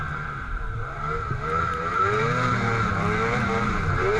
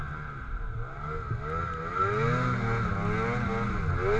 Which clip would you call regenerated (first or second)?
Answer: first